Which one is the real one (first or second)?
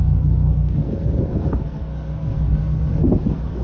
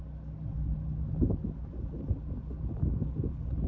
second